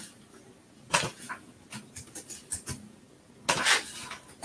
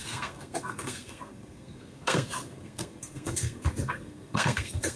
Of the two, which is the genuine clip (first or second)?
first